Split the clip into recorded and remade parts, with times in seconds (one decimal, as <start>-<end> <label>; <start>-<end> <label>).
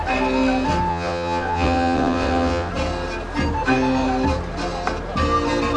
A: 0.0-0.9 recorded; 0.9-2.7 remade; 2.7-5.8 recorded